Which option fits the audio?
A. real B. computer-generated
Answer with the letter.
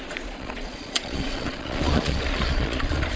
B